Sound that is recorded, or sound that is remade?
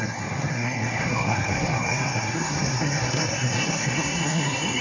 remade